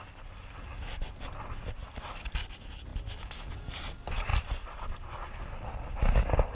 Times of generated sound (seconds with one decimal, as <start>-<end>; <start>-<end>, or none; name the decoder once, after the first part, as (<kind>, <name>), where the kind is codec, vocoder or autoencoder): 0.7-1.3 (vocoder, BigVGAN v2); 1.8-2.4; 4.3-5.9